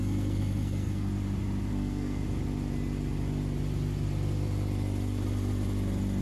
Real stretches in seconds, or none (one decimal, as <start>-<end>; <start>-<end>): 1.1-1.7; 2.2-6.2